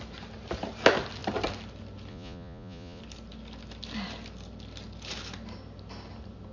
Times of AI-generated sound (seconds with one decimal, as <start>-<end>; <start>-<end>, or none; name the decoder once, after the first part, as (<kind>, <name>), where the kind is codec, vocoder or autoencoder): 2.1-3.0 (vocoder, Vocos)